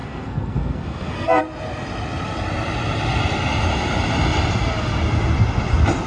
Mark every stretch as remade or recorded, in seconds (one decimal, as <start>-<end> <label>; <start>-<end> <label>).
0.0-1.4 remade; 1.4-6.1 recorded